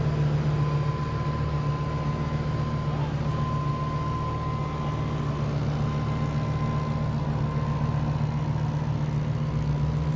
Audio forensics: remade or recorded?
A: recorded